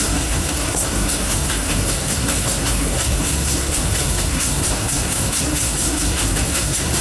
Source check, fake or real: fake